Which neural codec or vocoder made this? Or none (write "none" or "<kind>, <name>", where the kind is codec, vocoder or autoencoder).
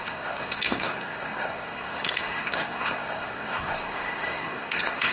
codec, SNAC